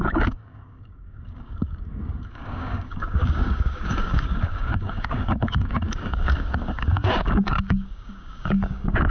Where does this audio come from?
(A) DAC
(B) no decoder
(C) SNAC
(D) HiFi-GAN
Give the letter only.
A